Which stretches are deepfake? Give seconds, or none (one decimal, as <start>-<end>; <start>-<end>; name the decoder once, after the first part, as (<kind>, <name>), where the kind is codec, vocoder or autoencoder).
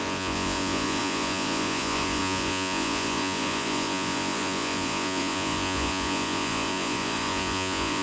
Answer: 0.0-8.0 (vocoder, Vocos)